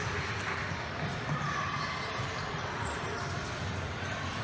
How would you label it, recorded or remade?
recorded